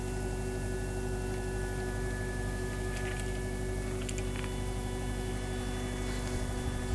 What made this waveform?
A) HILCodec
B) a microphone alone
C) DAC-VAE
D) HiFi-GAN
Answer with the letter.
B